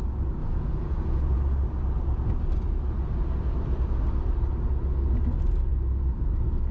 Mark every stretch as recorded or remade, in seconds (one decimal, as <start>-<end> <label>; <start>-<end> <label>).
0.0-0.4 recorded; 0.4-1.4 remade; 1.4-6.7 recorded